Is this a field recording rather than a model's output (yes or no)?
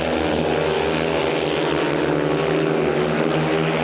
yes